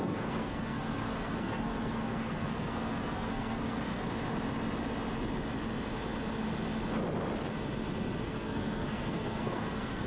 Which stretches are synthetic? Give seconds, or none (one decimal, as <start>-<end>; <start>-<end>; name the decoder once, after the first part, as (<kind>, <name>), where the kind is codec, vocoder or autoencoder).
0.0-4.0 (codec, SNAC); 8.2-10.1